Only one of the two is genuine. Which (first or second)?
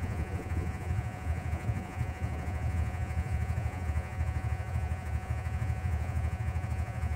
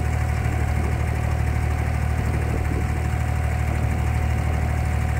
second